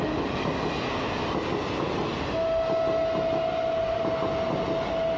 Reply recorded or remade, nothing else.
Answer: recorded